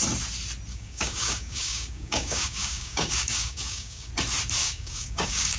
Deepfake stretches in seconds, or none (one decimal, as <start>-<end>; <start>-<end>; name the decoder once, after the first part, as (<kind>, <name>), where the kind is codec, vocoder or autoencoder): 0.7-4.1 (codec, DAC); 4.6-5.6